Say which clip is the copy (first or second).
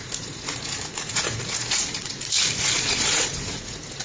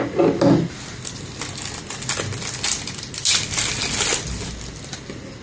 first